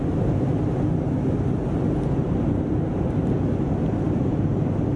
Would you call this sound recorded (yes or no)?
yes